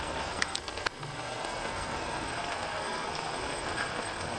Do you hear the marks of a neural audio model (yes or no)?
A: yes